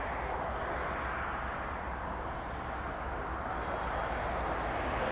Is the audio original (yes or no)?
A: yes